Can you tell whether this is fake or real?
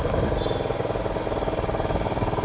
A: real